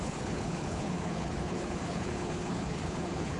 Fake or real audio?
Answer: fake